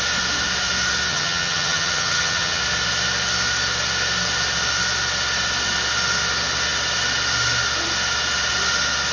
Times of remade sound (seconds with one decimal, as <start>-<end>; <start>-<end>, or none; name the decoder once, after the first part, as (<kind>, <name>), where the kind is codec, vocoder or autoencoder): 1.1-2.6 (vocoder, HiFi-GAN)